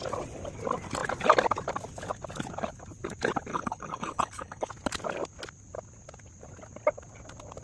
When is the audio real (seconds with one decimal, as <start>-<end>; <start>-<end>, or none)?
0.0-3.5; 4.7-7.6